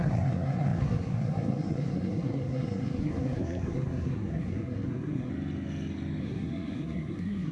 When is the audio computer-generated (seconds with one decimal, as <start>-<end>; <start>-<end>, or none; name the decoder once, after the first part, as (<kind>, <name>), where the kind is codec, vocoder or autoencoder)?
0.0-5.3 (codec, SNAC); 6.2-7.5